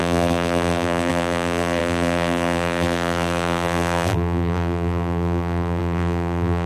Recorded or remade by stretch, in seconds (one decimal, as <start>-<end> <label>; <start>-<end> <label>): 0.0-6.7 remade